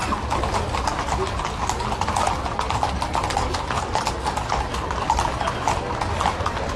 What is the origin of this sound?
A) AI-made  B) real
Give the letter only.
B